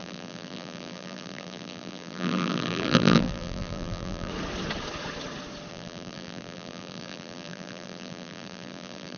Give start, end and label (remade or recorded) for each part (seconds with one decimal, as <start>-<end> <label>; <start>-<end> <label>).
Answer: 0.0-4.3 remade; 4.3-5.7 recorded; 5.7-9.2 remade